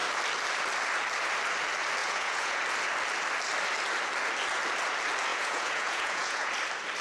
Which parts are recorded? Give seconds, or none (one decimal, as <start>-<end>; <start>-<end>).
0.0-2.0; 2.6-5.3; 6.5-7.0